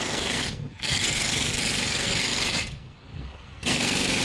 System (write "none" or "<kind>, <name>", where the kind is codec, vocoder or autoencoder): codec, SNAC